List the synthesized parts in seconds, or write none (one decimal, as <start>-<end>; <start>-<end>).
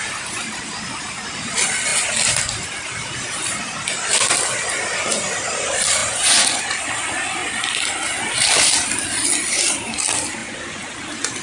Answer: 6.0-6.6; 10.4-10.9